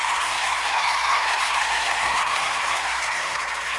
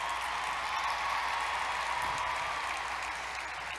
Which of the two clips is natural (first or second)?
second